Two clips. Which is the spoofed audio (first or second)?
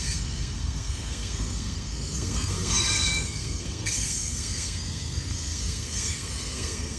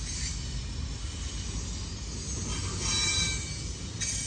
first